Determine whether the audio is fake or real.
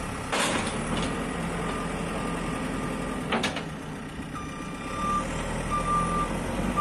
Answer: real